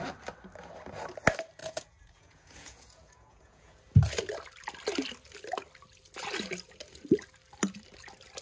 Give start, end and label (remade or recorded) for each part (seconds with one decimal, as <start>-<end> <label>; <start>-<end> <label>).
0.0-1.6 recorded; 1.6-3.8 remade; 3.8-8.4 recorded